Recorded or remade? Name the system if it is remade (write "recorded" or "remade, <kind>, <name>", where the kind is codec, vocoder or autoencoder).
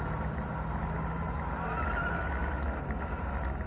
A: recorded